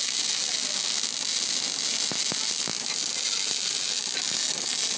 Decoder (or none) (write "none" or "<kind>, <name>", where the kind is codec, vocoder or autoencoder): none